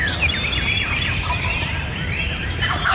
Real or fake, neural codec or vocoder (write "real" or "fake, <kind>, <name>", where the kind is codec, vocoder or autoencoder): fake, vocoder, BigVGAN v2